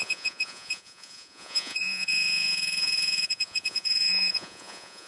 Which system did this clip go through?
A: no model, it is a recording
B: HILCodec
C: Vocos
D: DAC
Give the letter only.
C